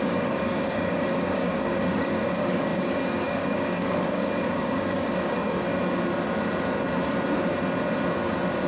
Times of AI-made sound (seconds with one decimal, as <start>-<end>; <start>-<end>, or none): 0.0-5.7